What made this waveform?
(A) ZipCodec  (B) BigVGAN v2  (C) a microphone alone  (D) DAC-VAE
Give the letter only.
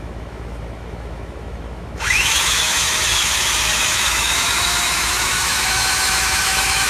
D